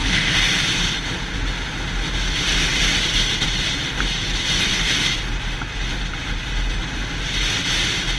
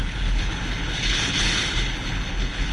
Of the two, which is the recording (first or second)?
first